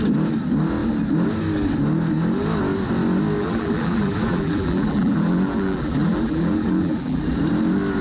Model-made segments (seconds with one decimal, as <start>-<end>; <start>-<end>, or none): 3.4-7.2

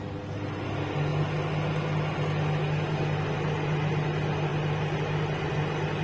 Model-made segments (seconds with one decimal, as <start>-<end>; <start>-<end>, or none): none

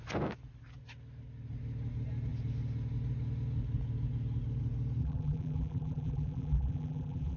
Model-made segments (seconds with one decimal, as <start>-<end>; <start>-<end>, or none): 5.0-7.4

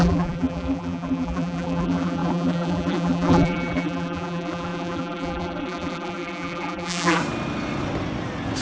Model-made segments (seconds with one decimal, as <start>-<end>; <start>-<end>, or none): 0.0-7.2